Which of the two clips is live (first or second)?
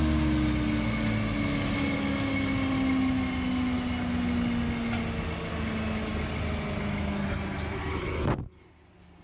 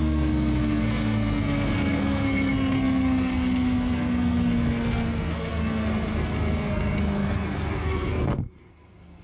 first